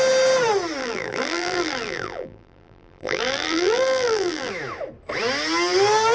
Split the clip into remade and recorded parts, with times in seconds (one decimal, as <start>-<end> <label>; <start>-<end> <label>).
0.0-0.8 recorded; 0.8-4.5 remade; 4.5-6.1 recorded